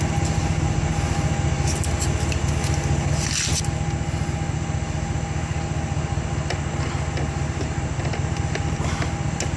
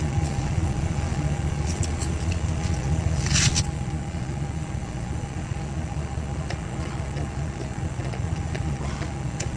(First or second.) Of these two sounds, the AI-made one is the second